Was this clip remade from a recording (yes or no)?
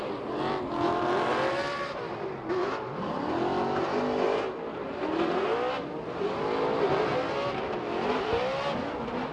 no